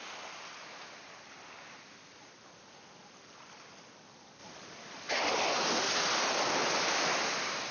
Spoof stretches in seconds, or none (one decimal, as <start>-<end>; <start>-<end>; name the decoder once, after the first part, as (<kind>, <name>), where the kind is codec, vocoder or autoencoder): 4.4-5.1 (vocoder, BigVGAN v2)